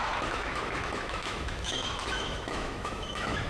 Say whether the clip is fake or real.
fake